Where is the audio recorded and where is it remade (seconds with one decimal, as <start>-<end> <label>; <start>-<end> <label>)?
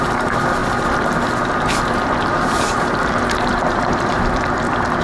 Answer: 0.0-0.6 remade; 0.6-2.2 recorded; 2.2-5.0 remade